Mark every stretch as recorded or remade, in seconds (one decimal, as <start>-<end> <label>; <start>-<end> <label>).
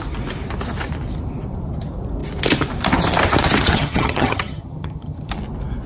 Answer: 0.0-3.7 recorded; 3.7-5.3 remade; 5.3-5.9 recorded